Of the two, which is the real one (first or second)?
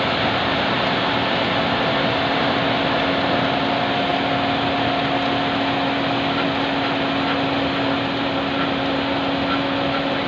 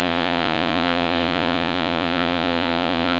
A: first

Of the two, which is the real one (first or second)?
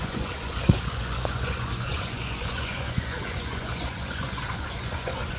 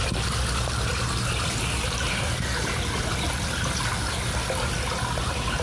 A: second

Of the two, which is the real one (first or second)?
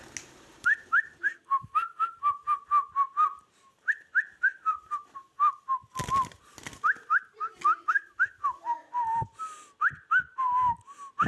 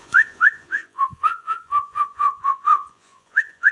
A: first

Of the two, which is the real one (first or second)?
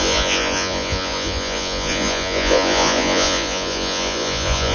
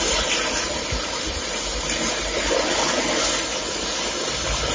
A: second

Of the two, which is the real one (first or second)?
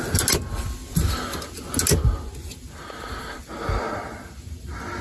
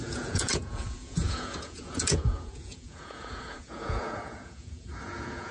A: first